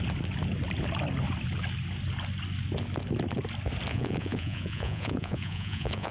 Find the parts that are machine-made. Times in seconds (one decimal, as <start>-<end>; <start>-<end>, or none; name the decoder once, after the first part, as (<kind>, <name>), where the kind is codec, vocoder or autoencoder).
3.9-6.1 (vocoder, Vocos)